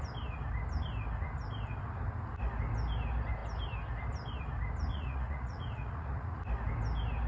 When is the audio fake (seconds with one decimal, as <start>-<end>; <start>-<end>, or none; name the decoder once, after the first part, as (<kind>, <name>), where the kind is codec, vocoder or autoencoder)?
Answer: 4.9-6.4 (vocoder, Vocos)